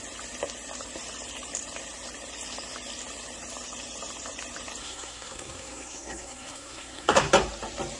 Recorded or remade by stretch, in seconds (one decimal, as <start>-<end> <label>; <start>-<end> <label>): 0.0-4.8 recorded; 4.8-7.3 remade; 7.3-8.0 recorded